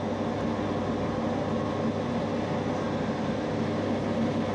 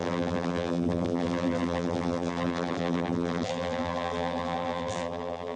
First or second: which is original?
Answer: first